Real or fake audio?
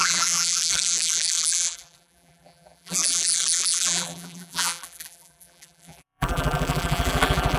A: fake